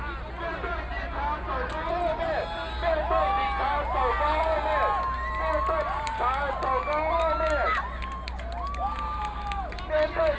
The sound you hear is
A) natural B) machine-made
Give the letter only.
A